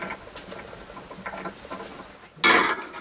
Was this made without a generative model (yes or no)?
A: yes